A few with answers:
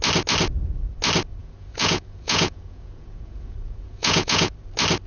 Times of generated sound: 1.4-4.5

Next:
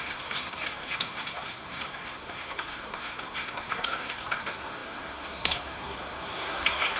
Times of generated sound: 0.0-7.0

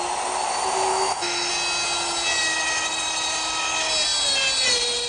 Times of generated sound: 0.9-1.5

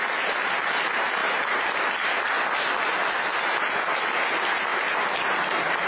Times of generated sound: none